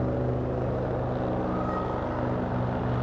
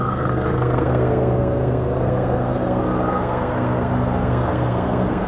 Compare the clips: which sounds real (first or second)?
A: first